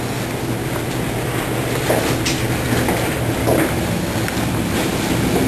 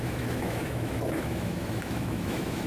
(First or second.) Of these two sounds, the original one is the first